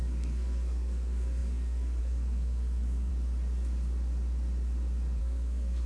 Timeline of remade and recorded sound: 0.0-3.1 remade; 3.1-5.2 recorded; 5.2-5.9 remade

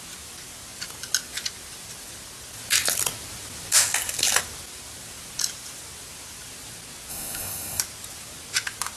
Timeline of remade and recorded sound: 0.0-7.1 recorded; 7.1-7.8 remade; 7.8-9.0 recorded

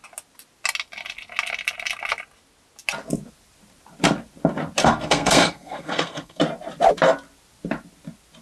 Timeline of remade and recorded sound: 0.0-4.8 recorded; 4.8-6.4 remade; 6.4-8.4 recorded

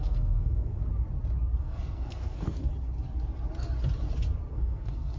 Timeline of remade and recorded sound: 0.0-0.8 remade; 0.8-1.6 recorded; 1.6-2.7 remade; 2.7-4.5 recorded; 4.5-5.2 remade

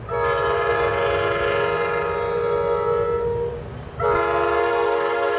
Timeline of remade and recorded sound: 0.0-4.6 recorded; 4.6-5.4 remade

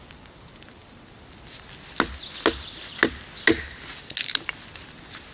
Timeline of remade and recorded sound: 0.0-5.3 recorded

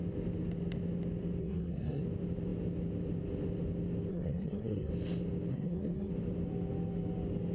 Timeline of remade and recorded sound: 0.0-1.4 recorded; 1.4-2.0 remade; 2.0-4.1 recorded; 4.1-4.9 remade; 4.9-5.5 recorded; 5.5-6.1 remade; 6.1-7.5 recorded

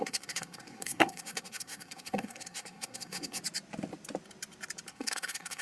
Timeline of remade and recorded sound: 0.0-3.4 remade; 3.4-4.9 recorded; 4.9-5.6 remade